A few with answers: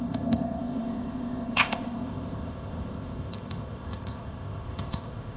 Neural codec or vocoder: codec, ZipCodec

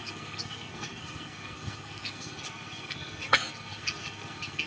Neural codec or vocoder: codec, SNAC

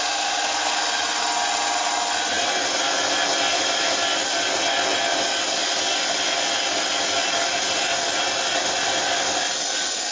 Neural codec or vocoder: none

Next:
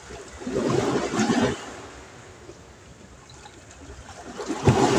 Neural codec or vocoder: none